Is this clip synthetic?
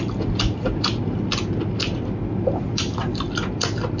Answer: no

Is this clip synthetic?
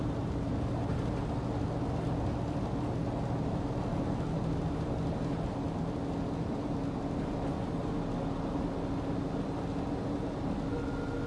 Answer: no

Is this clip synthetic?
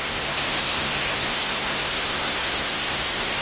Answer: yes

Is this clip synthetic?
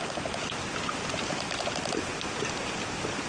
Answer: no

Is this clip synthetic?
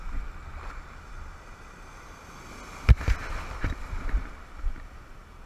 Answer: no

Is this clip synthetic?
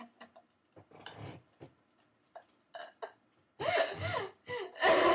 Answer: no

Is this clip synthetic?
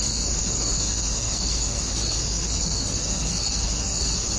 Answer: yes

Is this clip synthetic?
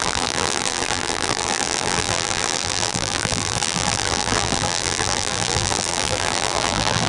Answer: yes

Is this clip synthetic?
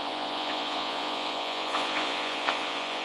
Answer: yes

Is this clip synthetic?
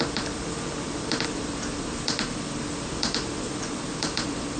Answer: yes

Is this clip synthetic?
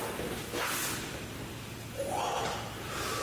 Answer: no